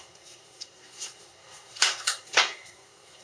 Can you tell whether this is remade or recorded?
remade